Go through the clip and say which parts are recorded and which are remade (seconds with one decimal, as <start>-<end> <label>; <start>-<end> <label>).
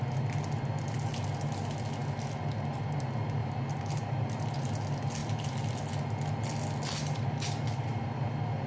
0.0-3.4 recorded; 3.4-4.2 remade; 4.2-8.7 recorded